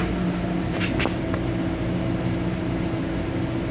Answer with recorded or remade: recorded